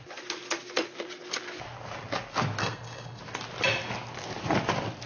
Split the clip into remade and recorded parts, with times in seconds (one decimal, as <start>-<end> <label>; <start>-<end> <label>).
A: 0.0-2.6 recorded; 2.6-3.2 remade; 3.2-5.1 recorded